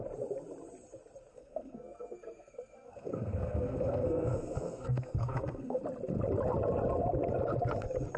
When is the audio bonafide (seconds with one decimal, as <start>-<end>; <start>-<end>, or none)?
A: 0.0-1.3; 5.8-8.2